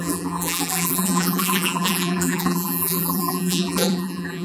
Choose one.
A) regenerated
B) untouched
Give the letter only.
A